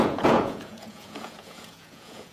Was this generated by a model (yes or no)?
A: yes